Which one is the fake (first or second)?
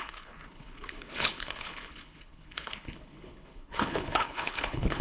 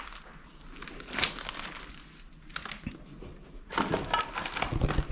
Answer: first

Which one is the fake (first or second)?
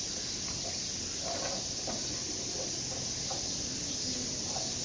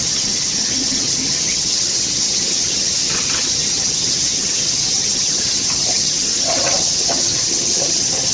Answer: second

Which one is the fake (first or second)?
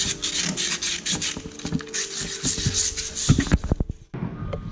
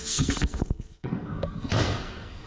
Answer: second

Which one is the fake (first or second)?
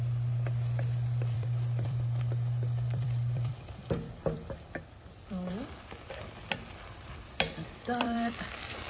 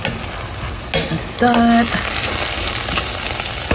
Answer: first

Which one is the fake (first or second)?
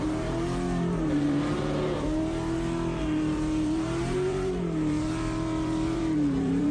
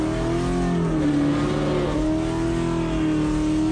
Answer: first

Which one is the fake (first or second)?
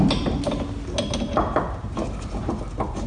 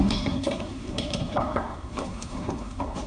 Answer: second